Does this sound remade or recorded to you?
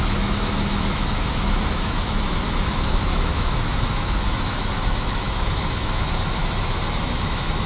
remade